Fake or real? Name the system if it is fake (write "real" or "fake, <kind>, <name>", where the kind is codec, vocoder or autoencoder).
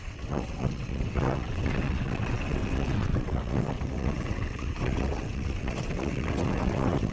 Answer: fake, vocoder, WaveNeXt